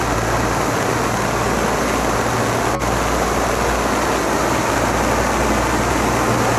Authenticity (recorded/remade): recorded